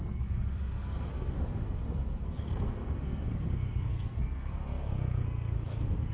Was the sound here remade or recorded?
remade